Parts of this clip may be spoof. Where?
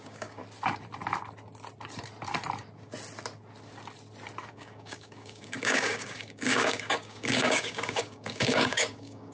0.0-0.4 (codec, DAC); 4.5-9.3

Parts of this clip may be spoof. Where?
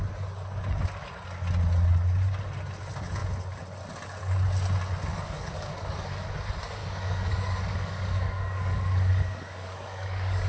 5.1-6.3 (codec, DAC); 6.8-10.5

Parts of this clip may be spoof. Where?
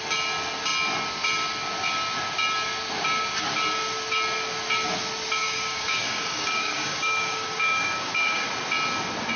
5.4-8.5 (codec, DAC)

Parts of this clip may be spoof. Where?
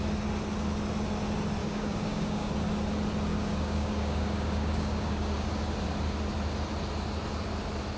1.6-2.5 (codec, DAC); 3.3-5.6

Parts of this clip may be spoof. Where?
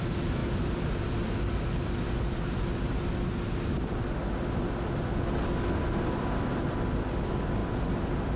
none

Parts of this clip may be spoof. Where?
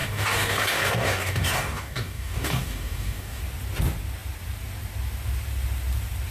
0.0-3.4 (codec, DAC)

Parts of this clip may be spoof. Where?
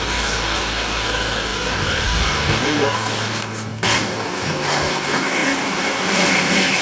0.0-6.8 (codec, DAC)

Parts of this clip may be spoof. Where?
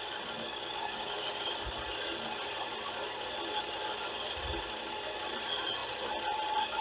0.5-1.5 (codec, DAC)